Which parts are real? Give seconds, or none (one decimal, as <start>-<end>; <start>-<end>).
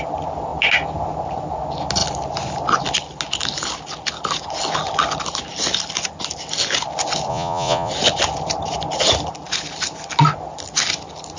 0.0-7.3; 7.9-11.4